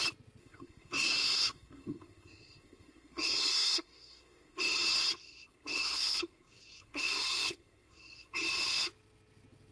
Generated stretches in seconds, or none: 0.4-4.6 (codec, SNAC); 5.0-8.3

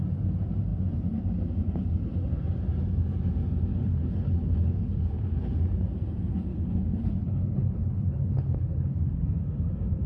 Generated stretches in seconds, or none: 3.7-5.5 (codec, HILCodec); 6.5-9.1